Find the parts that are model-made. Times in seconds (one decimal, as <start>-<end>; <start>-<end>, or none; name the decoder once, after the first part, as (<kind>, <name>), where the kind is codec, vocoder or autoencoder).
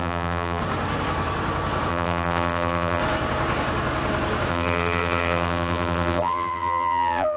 0.0-0.6 (vocoder, BigVGAN v2); 1.9-3.0; 4.5-7.4